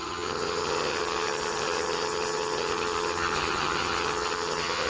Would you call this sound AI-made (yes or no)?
yes